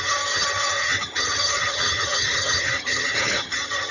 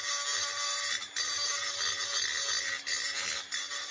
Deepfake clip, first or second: first